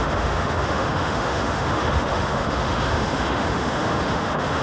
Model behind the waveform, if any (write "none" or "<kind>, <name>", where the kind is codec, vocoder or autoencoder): autoencoder, DAC-VAE